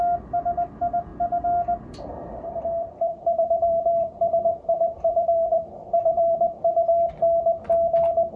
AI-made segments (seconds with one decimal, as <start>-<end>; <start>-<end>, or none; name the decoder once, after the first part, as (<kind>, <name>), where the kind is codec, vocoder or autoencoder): 3.1-7.1 (vocoder, BigVGAN v2)